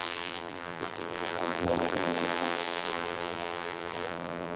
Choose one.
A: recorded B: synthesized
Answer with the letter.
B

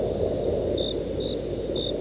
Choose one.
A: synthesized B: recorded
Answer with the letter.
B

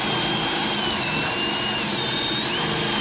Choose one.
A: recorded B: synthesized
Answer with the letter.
A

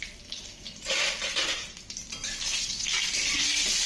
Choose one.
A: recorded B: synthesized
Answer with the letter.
A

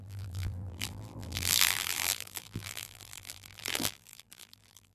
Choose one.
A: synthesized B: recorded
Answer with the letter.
A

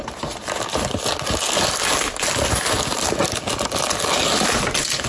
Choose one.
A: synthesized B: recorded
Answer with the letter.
B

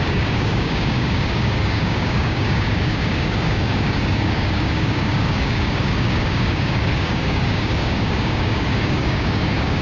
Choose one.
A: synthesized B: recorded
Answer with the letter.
A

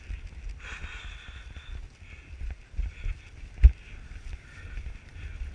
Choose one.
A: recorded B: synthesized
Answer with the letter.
A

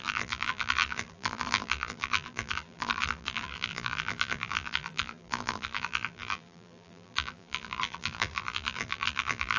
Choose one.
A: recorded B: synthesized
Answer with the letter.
B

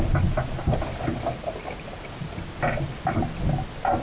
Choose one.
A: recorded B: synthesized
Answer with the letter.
A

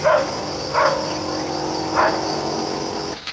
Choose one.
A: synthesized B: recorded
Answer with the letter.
B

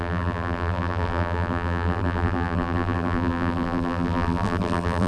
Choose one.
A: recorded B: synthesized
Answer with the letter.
B